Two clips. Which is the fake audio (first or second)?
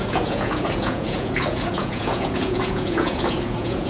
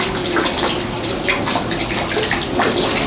first